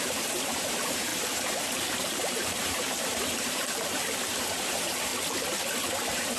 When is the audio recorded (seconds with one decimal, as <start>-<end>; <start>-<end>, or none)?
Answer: 5.1-5.9